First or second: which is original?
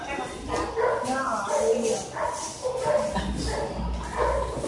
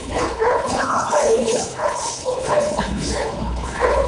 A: first